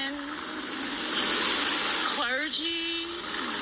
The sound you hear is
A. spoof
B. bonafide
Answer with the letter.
B